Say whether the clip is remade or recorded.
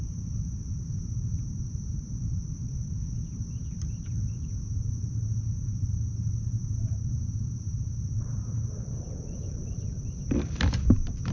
remade